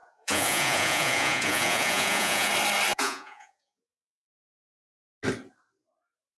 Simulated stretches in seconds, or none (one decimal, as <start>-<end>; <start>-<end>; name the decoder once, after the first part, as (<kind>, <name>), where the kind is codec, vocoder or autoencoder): 0.0-2.5 (vocoder, Vocos); 2.9-4.9